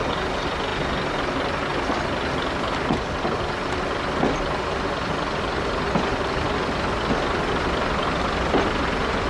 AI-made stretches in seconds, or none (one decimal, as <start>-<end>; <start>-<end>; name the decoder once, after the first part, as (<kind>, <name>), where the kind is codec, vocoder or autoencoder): none